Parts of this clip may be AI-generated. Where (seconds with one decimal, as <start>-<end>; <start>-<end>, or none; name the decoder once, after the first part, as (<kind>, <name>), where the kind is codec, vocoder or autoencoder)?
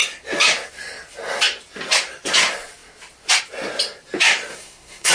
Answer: 4.5-5.1 (codec, SNAC)